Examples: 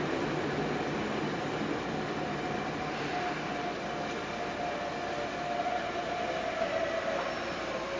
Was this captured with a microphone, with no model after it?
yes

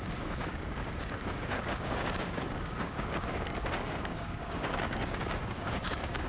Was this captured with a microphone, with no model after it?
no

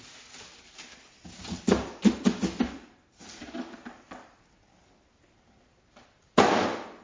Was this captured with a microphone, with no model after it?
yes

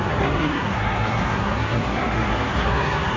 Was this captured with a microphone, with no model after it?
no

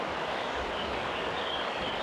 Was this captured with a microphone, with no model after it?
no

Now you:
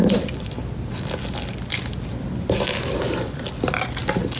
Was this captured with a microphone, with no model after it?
yes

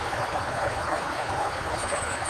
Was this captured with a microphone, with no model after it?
no